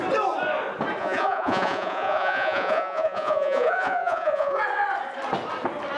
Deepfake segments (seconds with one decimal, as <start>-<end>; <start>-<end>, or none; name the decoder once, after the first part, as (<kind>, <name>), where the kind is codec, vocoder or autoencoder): 1.0-4.6 (vocoder, Vocos)